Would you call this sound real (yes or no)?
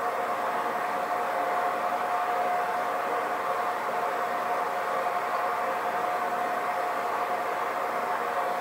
yes